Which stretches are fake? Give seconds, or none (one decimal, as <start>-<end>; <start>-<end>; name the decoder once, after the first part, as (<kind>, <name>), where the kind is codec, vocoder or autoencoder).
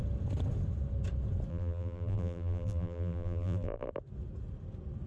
1.5-3.9 (vocoder, BigVGAN v2)